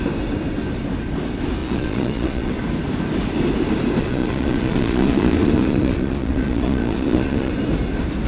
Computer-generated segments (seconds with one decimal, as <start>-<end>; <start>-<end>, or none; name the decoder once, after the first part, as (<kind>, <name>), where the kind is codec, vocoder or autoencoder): 1.6-2.5 (vocoder, Vocos); 4.0-7.5